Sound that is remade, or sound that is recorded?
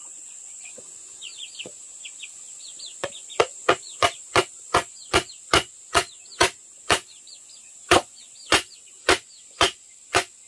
remade